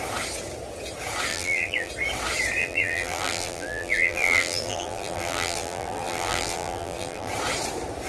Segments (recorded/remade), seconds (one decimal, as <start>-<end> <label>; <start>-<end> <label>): 0.0-1.3 recorded; 1.3-1.9 remade; 1.9-2.6 recorded; 2.6-7.3 remade; 7.3-8.1 recorded